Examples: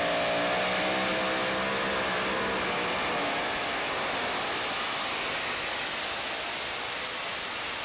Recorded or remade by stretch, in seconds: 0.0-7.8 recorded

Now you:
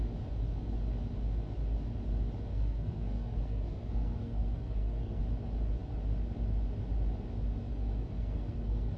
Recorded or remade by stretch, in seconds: 0.0-2.5 recorded; 2.5-5.2 remade; 5.2-7.7 recorded; 7.7-9.0 remade

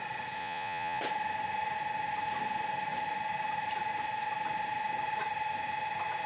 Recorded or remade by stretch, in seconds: 0.0-0.4 recorded; 0.4-1.0 remade; 1.0-6.3 recorded

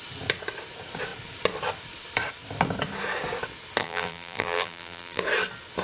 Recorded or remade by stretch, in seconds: 0.0-3.8 recorded; 3.8-5.2 remade; 5.2-5.8 recorded

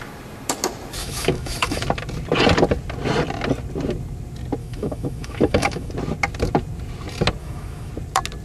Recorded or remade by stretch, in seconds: 0.0-1.0 recorded; 1.0-1.8 remade; 1.8-4.6 recorded; 4.6-5.9 remade; 5.9-7.4 recorded; 7.4-7.9 remade; 7.9-8.4 recorded